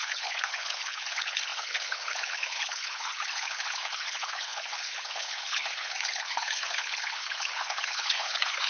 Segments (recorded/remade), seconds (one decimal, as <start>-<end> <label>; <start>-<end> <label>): 0.0-8.7 remade